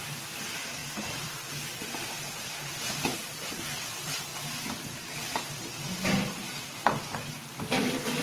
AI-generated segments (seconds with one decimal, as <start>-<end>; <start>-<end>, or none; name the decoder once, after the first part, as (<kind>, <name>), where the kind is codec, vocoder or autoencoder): 0.0-4.3 (vocoder, BigVGAN v2); 5.4-6.2; 7.3-8.2